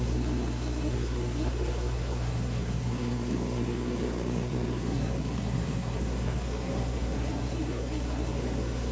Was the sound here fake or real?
fake